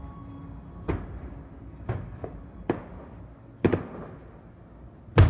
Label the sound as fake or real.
real